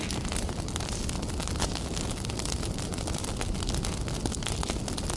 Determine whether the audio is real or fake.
real